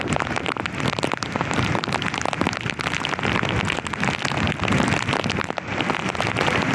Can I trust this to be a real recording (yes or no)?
no